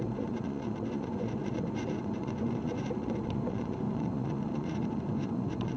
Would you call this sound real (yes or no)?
no